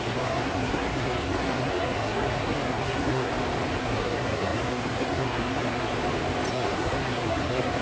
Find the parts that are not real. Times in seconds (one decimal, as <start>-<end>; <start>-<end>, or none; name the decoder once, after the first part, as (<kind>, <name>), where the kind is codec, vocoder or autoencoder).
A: 0.0-3.3 (codec, SNAC); 3.8-5.9; 6.5-7.8